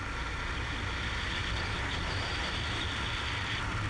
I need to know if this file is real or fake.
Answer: real